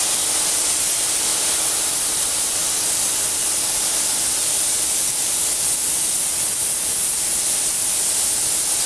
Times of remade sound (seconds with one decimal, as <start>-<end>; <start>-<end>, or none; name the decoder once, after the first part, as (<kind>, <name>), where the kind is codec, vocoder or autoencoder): none